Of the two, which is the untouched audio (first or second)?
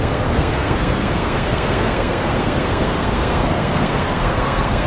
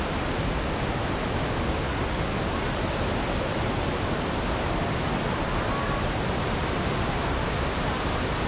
second